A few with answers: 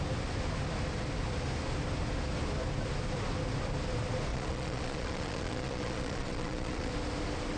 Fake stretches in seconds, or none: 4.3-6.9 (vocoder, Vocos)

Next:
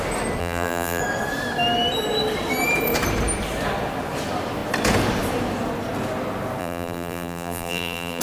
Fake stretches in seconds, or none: 0.4-1.0 (vocoder, BigVGAN v2); 6.6-8.2

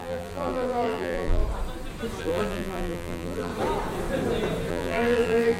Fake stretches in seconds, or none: 0.0-1.4 (vocoder, BigVGAN v2); 2.2-3.5; 4.7-5.6

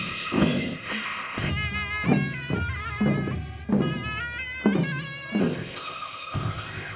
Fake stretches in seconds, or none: 0.0-1.5 (codec, ZipCodec); 5.4-7.0

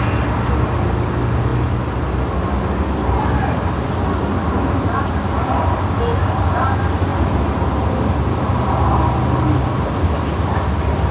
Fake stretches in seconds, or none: none

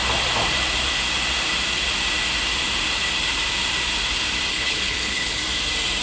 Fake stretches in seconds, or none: 4.5-5.4 (codec, HILCodec)

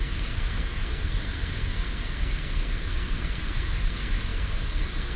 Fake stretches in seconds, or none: 0.0-5.2 (codec, SNAC)

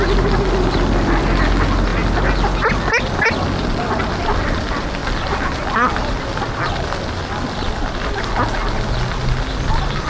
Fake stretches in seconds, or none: none